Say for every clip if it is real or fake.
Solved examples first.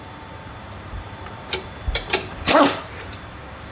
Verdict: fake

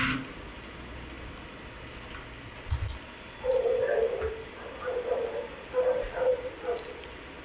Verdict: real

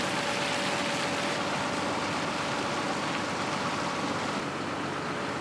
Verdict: real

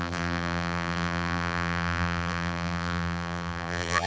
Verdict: fake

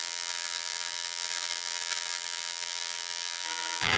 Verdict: fake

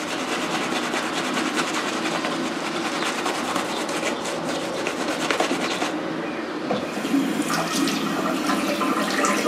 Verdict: real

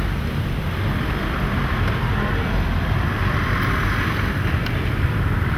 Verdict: fake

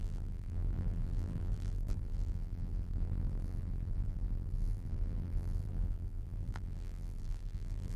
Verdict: fake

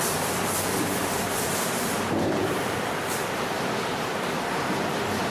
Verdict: fake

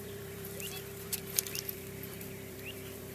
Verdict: fake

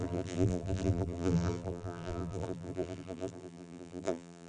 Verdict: fake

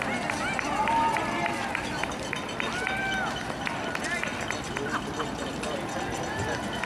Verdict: real